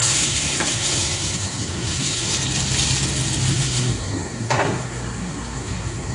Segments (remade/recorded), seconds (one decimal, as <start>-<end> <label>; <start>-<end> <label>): 0.0-2.3 remade; 2.3-3.5 recorded; 3.5-6.1 remade